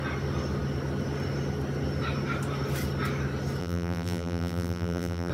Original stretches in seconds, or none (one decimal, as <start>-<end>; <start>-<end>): 0.0-3.6